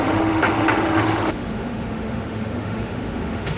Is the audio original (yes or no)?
no